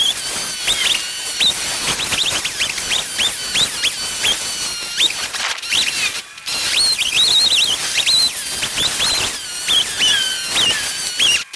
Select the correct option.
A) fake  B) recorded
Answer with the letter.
B